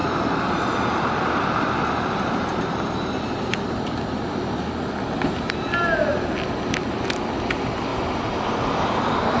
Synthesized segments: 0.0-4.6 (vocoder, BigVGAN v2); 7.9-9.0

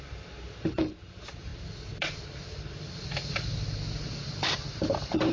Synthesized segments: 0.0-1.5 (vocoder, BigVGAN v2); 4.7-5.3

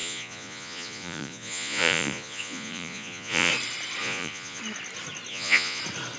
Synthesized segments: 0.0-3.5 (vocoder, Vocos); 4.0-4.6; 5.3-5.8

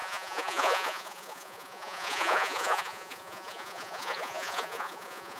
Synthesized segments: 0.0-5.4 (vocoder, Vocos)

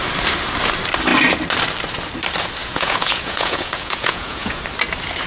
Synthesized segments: 2.6-4.6 (vocoder, Vocos)

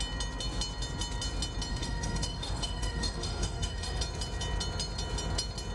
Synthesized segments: 1.7-4.0 (autoencoder, DAC-VAE)